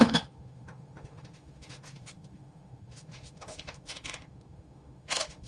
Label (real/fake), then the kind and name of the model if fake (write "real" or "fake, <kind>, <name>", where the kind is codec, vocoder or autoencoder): fake, autoencoder, DAC-VAE